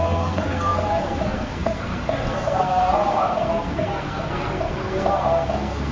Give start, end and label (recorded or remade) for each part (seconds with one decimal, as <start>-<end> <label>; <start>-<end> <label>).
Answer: 0.0-5.9 remade